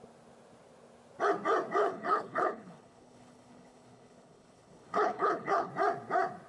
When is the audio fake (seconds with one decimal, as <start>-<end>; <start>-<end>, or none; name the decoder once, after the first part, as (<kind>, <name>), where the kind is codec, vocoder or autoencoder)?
1.8-5.7 (codec, HILCodec)